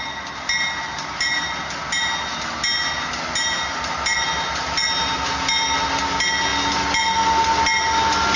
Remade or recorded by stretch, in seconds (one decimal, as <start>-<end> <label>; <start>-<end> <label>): 0.0-8.4 recorded